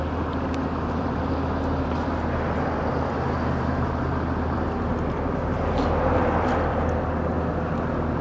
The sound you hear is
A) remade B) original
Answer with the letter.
B